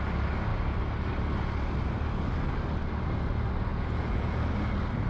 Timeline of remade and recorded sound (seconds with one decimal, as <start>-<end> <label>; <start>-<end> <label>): 0.0-3.7 recorded; 3.7-4.5 remade; 4.5-5.1 recorded